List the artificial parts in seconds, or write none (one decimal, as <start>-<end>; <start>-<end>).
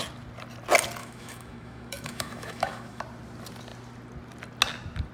1.0-3.0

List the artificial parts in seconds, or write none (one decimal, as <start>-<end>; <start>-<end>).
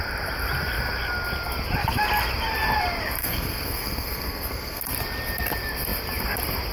3.2-4.8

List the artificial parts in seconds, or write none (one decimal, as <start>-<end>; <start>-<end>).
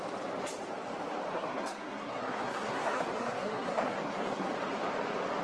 1.3-4.5